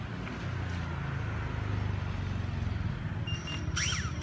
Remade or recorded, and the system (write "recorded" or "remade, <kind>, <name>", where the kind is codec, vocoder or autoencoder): recorded